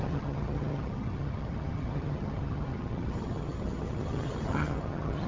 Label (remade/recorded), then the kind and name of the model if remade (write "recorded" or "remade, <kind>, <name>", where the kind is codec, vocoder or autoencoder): remade, vocoder, HiFi-GAN